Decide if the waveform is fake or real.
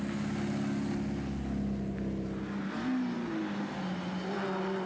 real